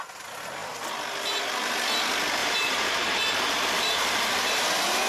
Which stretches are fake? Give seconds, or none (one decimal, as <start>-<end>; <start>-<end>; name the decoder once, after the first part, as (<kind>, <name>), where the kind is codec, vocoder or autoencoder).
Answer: 2.4-4.5 (vocoder, BigVGAN v2)

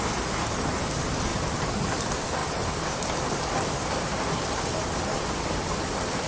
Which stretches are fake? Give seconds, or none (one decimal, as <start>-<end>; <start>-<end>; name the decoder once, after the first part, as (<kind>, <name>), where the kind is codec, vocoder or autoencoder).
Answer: 1.3-2.0 (vocoder, BigVGAN v2); 2.4-4.6

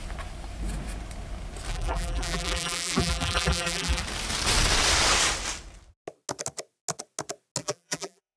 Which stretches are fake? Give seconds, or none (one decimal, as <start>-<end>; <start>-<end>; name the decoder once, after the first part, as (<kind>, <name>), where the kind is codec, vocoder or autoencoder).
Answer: 1.7-4.0 (vocoder, BigVGAN v2); 7.6-8.4

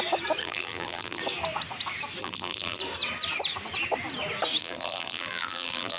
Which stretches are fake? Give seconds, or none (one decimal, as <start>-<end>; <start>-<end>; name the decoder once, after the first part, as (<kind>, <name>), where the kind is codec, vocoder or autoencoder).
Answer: 0.4-1.2 (vocoder, BigVGAN v2); 2.2-2.8; 4.6-6.0

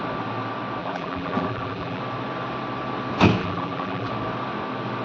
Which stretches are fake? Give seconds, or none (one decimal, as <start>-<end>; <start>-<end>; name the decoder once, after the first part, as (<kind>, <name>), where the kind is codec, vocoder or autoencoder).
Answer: 0.8-2.0 (vocoder, BigVGAN v2); 3.4-4.1

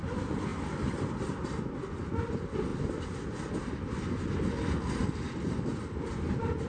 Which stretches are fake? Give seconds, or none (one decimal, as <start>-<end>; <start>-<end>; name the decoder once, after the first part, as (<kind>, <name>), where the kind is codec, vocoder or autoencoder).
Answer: 2.7-3.5 (vocoder, BigVGAN v2)

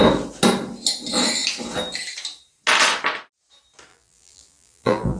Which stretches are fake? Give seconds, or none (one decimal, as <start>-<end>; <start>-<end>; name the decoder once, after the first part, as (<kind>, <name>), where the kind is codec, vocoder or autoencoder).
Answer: 3.9-5.2 (vocoder, BigVGAN v2)

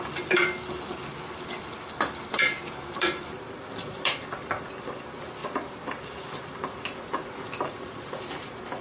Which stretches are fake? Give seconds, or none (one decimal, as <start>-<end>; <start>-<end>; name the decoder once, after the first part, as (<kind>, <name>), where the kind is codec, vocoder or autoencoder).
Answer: 0.0-5.4 (vocoder, BigVGAN v2); 7.6-8.8